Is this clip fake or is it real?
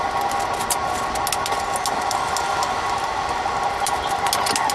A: real